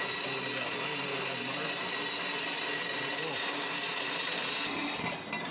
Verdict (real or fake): real